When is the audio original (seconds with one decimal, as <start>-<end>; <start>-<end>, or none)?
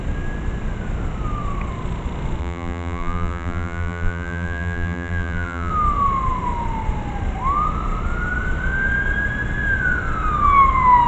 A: 0.0-2.4; 5.7-11.1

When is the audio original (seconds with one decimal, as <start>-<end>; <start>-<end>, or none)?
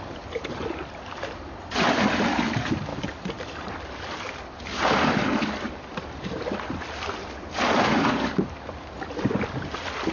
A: 0.0-2.9; 3.7-10.1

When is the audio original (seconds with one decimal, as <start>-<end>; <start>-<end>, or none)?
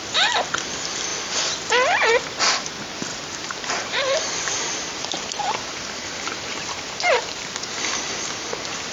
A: 0.0-3.1; 5.9-6.5; 8.0-8.9